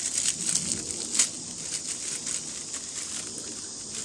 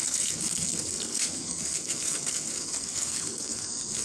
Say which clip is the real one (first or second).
first